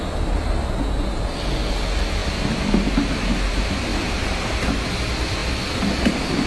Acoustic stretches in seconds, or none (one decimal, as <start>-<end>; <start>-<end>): 0.0-3.9; 4.7-6.5